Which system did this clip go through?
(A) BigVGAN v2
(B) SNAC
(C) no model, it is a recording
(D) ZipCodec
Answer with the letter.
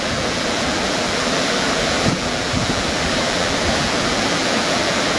A